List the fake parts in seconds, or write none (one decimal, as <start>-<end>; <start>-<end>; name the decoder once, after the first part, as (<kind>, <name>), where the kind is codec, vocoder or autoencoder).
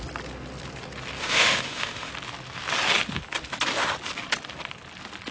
1.2-2.1 (autoencoder, DAC-VAE)